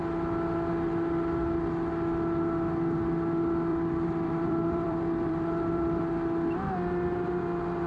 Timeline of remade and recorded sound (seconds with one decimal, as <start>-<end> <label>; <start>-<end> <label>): 0.0-3.7 recorded; 3.7-6.0 remade; 6.0-7.9 recorded